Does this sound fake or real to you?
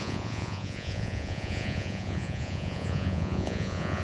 fake